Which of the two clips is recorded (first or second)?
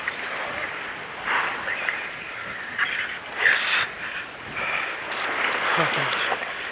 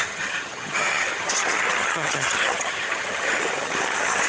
first